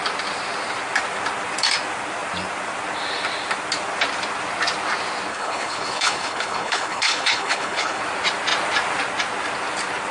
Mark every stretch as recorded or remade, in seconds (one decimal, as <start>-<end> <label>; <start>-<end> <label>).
0.0-5.3 recorded; 5.3-8.0 remade; 8.0-10.1 recorded